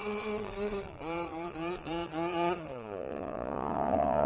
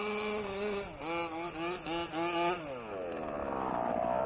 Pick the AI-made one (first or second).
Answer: first